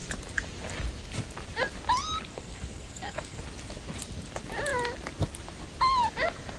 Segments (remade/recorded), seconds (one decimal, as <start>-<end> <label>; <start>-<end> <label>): 0.0-2.3 recorded; 2.3-3.4 remade; 3.4-6.6 recorded